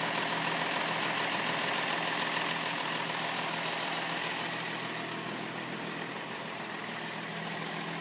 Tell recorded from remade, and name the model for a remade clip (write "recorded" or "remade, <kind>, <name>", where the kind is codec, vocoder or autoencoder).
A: recorded